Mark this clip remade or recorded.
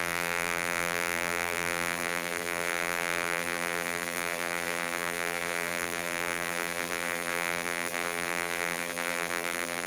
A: remade